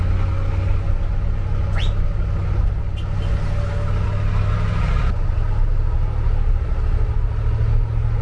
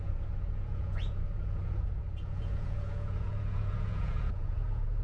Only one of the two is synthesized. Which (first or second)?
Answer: second